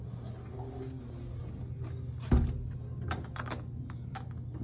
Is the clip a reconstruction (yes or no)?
no